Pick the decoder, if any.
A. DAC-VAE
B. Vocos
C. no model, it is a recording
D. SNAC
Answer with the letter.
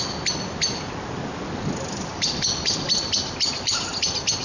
C